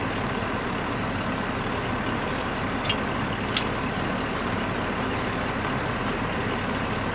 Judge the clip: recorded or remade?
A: recorded